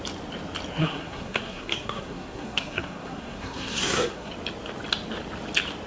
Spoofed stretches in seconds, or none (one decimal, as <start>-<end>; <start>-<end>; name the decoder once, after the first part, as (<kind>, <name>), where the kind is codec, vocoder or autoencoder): 0.8-4.3 (codec, SNAC)